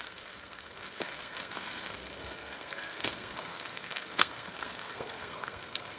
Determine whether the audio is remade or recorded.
remade